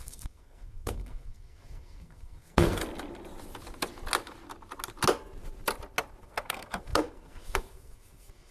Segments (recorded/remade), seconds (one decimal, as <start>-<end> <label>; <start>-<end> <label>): 0.0-2.8 remade; 2.8-6.2 recorded; 6.2-8.5 remade